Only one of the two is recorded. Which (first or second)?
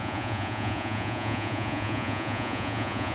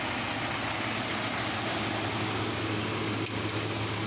second